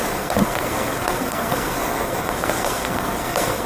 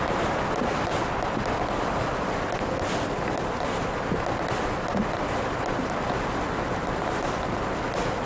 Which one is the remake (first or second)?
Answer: first